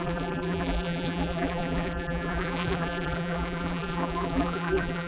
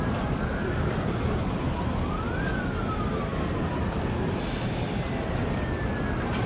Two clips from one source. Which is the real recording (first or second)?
second